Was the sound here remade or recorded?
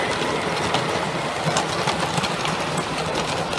recorded